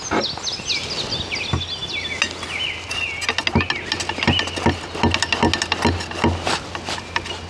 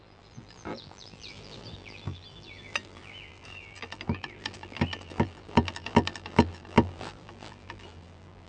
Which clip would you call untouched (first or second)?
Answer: first